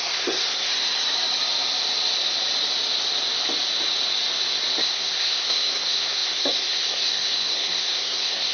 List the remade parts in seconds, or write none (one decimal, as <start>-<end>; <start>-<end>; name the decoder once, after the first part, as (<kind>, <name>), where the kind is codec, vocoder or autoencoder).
0.0-0.7 (codec, SNAC); 4.8-8.5